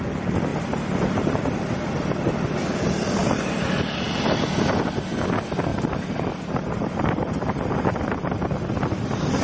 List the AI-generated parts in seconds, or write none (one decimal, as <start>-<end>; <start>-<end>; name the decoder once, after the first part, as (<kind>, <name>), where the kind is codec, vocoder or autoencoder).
0.5-3.8 (vocoder, BigVGAN v2); 5.7-9.4